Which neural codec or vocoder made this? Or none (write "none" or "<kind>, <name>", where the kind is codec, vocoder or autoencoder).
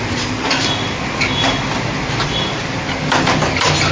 none